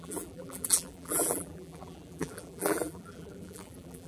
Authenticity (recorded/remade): remade